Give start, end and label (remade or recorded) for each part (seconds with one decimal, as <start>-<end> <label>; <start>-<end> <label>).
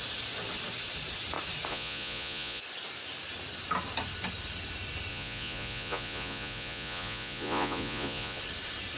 0.0-1.7 recorded; 1.7-2.6 remade; 2.6-5.1 recorded; 5.1-8.4 remade; 8.4-9.0 recorded